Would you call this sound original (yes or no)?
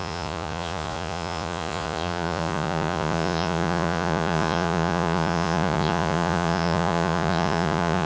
no